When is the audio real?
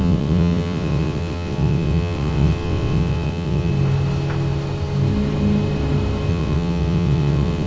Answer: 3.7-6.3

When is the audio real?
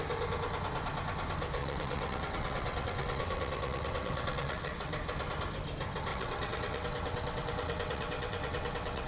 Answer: 0.0-1.6; 4.9-6.1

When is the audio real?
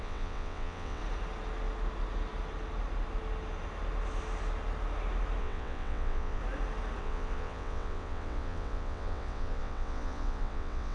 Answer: 1.0-5.4; 6.4-7.0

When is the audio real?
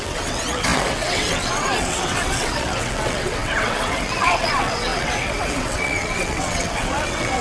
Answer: none